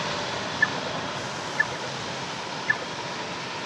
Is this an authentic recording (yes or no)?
yes